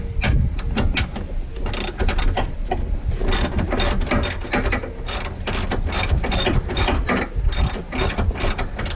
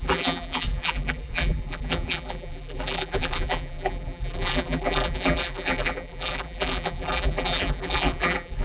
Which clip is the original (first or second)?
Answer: first